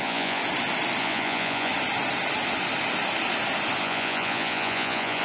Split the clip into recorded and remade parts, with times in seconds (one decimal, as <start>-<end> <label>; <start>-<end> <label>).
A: 0.0-0.4 remade; 0.4-1.0 recorded; 1.0-1.7 remade; 1.7-3.8 recorded; 3.8-5.2 remade